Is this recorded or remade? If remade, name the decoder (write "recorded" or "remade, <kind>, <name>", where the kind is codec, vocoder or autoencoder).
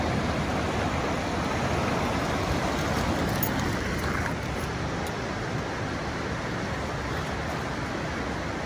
recorded